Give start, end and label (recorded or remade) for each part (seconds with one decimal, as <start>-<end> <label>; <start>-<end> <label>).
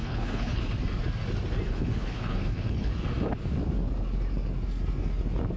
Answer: 0.0-0.6 remade; 0.6-1.7 recorded; 1.7-2.9 remade; 2.9-5.6 recorded